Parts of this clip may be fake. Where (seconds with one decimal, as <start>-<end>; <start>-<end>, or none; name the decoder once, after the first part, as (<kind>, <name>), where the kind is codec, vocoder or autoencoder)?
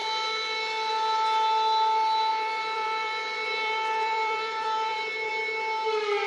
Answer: 2.3-5.3 (vocoder, BigVGAN v2)